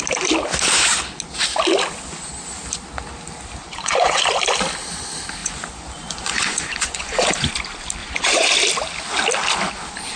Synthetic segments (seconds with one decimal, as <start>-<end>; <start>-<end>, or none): 3.6-4.2; 5.4-7.5; 8.0-8.5